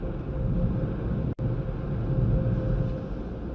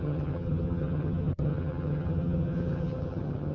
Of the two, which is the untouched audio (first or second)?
first